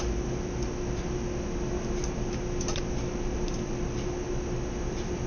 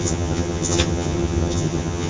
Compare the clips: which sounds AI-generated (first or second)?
second